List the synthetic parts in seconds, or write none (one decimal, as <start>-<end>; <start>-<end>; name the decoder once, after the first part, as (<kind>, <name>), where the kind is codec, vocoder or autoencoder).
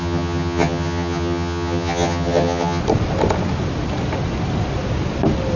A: 0.0-2.8 (vocoder, HiFi-GAN)